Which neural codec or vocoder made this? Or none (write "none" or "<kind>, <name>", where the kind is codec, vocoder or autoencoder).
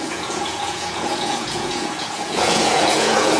vocoder, Vocos